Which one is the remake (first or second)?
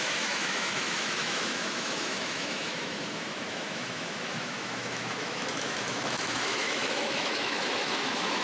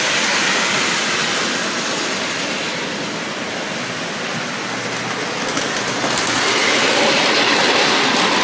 first